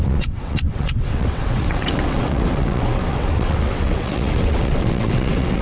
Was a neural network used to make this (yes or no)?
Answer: yes